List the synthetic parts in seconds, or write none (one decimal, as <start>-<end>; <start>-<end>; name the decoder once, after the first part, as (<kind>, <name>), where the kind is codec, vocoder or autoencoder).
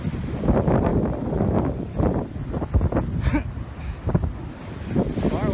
none